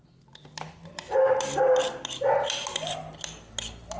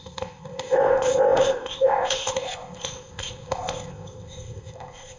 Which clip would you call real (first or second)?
first